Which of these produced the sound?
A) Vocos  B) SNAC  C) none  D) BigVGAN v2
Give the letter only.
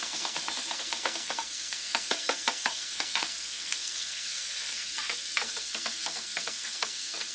B